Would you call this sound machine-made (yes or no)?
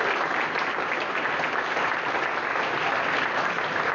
no